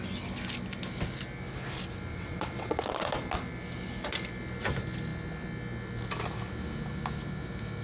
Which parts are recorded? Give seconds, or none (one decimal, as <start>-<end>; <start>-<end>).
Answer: 0.0-2.1; 3.1-7.8